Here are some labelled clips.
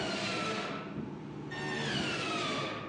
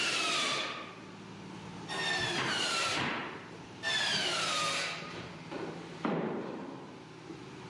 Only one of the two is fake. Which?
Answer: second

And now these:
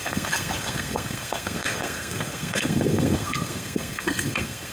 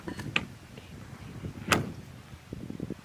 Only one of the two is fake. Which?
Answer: first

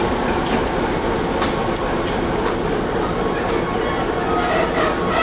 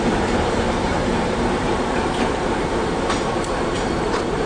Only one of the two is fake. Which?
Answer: second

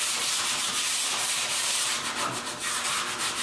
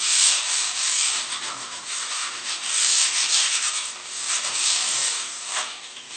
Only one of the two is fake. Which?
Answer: second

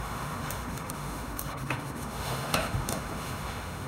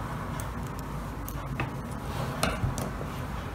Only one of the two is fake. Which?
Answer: first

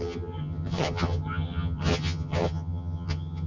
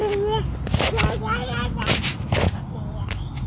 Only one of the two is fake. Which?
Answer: first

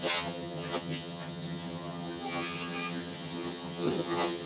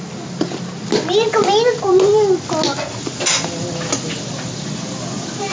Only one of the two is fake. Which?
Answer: first